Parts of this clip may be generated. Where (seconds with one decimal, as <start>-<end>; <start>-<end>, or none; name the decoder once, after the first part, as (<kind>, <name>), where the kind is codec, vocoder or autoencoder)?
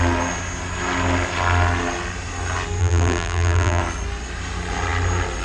2.8-3.8 (vocoder, BigVGAN v2)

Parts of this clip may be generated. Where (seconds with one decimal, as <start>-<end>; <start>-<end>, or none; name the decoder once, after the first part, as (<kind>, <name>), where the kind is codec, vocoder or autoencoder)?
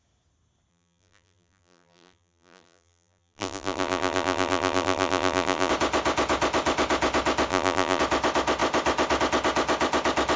0.7-5.7 (vocoder, BigVGAN v2); 7.5-8.0